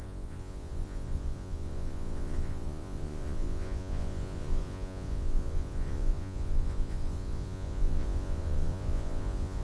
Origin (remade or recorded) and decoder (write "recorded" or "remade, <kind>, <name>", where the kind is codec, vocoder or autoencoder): remade, vocoder, Vocos